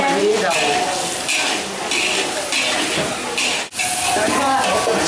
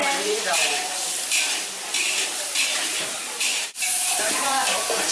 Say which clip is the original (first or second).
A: first